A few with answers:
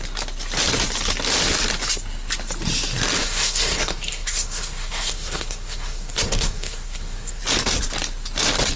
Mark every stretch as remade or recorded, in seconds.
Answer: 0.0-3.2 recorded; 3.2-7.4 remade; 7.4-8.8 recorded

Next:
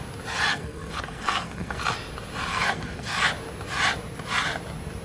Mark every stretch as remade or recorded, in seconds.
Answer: 0.0-0.5 recorded; 0.5-1.8 remade; 1.8-2.5 recorded; 2.5-3.3 remade; 3.3-5.0 recorded

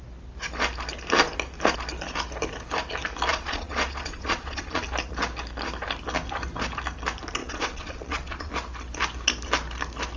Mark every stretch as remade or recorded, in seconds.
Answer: 0.0-3.3 recorded; 3.3-4.8 remade; 4.8-7.4 recorded; 7.4-8.5 remade; 8.5-10.2 recorded

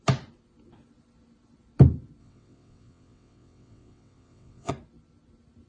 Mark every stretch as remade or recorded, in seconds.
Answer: 0.0-2.2 recorded; 2.2-4.7 remade; 4.7-5.7 recorded

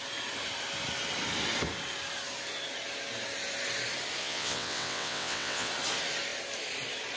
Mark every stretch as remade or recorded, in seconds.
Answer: 0.0-4.2 recorded; 4.2-5.7 remade; 5.7-7.2 recorded

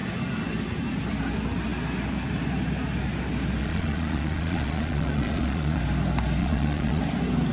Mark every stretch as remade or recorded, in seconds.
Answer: 0.0-3.6 recorded; 3.6-5.8 remade; 5.8-6.4 recorded; 6.4-7.0 remade; 7.0-7.5 recorded